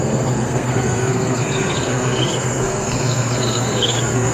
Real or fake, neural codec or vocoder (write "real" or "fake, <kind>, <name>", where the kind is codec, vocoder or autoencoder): fake, codec, SNAC